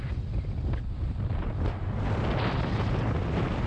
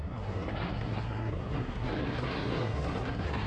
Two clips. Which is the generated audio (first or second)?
second